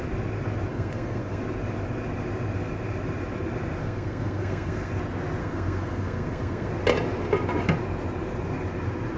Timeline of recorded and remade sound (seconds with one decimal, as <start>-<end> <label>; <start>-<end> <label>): 0.0-0.7 recorded; 0.7-1.4 remade; 1.4-3.8 recorded; 3.8-4.9 remade; 4.9-5.4 recorded; 5.4-6.7 remade; 6.7-9.2 recorded